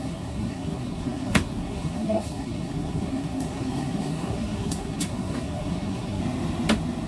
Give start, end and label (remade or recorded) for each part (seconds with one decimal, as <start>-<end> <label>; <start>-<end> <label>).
0.0-6.2 remade; 6.2-7.1 recorded